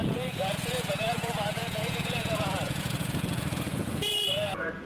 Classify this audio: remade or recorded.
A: remade